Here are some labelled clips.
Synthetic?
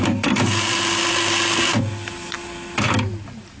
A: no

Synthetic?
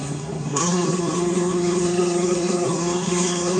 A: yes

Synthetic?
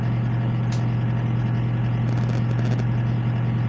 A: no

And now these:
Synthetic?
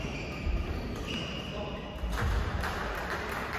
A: no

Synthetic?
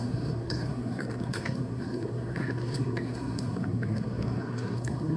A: yes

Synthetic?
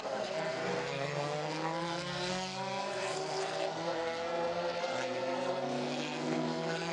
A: yes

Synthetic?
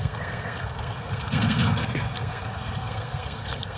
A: yes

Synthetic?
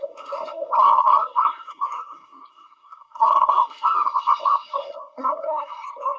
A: yes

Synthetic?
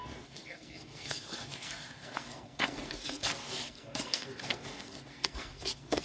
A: yes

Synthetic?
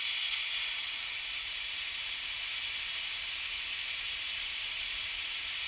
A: no